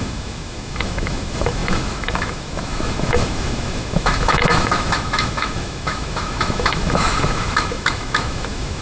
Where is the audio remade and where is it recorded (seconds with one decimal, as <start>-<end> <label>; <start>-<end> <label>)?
0.0-8.8 remade